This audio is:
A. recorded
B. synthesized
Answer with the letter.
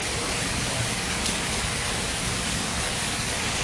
B